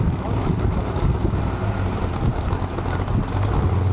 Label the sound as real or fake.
real